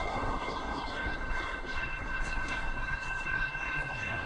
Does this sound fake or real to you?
fake